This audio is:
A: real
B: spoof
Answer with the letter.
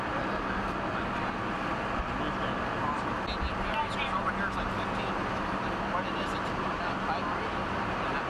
A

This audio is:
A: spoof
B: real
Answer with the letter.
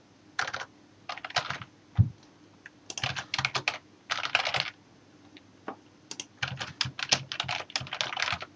B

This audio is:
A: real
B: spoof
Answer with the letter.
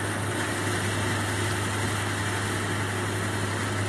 A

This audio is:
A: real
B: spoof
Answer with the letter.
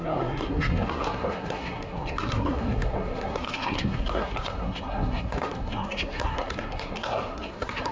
B